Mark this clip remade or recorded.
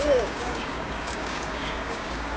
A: remade